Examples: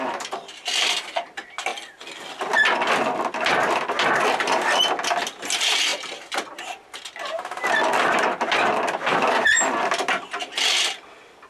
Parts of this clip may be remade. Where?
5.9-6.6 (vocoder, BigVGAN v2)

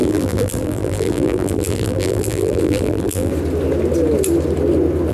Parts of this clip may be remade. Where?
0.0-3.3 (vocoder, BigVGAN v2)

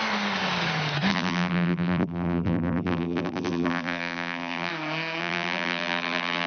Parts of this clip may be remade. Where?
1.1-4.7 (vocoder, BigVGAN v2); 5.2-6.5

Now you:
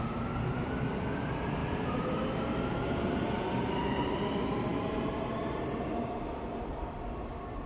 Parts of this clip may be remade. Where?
1.6-2.1 (vocoder, BigVGAN v2)